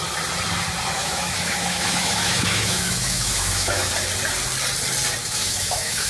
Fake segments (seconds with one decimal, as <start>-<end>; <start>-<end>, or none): 1.0-3.9; 5.2-6.1